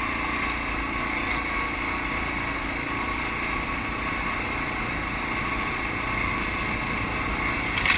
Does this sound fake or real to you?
real